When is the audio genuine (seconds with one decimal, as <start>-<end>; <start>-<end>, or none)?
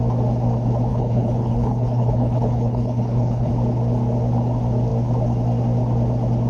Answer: 0.0-0.9; 3.5-6.5